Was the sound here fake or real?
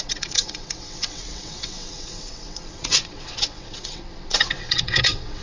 fake